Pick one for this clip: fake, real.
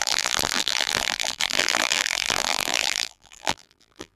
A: fake